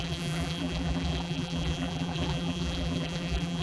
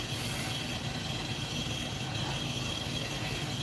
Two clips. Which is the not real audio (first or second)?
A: first